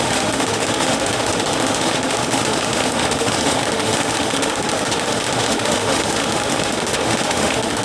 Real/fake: fake